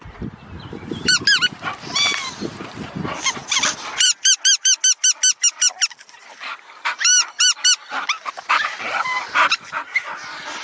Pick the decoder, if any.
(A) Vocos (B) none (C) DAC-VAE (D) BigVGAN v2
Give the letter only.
B